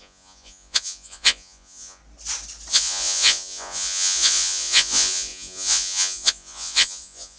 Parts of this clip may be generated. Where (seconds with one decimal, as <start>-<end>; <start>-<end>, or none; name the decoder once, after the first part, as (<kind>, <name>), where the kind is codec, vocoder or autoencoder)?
0.0-2.0 (vocoder, Vocos); 2.7-7.4